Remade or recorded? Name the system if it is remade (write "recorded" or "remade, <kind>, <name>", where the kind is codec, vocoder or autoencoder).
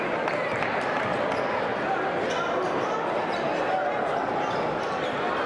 recorded